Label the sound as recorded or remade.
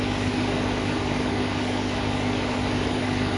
remade